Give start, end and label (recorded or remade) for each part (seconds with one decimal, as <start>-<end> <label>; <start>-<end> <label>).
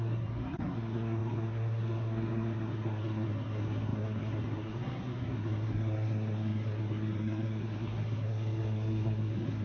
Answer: 0.0-9.6 remade